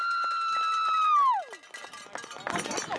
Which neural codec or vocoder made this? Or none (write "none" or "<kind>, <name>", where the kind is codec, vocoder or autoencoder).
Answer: none